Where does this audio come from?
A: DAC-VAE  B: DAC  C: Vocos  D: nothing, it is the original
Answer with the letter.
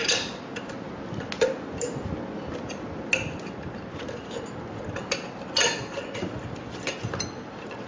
D